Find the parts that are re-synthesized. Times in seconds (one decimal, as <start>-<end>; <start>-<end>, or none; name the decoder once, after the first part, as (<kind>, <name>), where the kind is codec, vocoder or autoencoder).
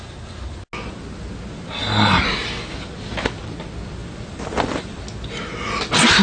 4.0-5.0 (vocoder, BigVGAN v2)